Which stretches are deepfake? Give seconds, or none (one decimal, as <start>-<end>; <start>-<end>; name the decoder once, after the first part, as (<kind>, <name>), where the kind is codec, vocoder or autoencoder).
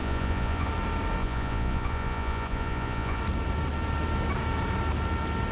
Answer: 0.0-0.7 (vocoder, Vocos); 1.2-3.2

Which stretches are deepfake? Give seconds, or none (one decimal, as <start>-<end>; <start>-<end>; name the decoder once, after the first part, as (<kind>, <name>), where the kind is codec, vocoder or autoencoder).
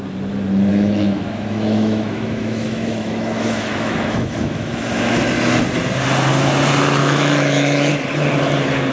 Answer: 0.7-5.2 (autoencoder, DAC-VAE); 7.0-7.9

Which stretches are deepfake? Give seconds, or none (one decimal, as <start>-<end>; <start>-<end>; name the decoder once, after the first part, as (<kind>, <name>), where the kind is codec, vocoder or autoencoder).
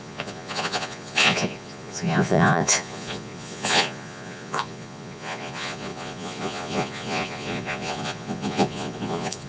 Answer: 0.0-9.5 (vocoder, Vocos)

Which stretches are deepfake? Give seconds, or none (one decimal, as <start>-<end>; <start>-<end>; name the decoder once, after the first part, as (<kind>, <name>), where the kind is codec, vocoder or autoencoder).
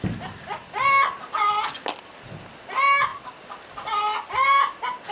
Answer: none